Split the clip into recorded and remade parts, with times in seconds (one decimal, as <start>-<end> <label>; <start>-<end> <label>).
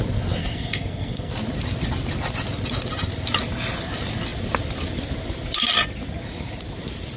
0.0-0.4 recorded; 0.4-1.3 remade; 1.3-7.2 recorded